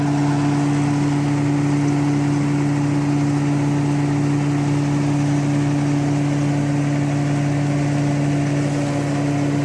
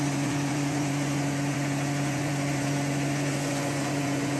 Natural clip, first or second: first